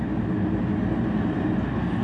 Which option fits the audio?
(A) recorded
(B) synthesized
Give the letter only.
A